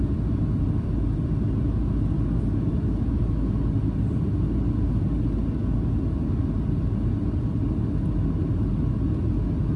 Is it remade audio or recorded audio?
recorded